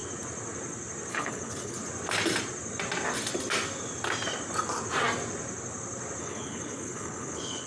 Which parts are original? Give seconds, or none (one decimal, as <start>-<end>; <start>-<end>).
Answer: 0.0-1.1; 1.8-6.2